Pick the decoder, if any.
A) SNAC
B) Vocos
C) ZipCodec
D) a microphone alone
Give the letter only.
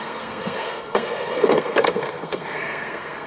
A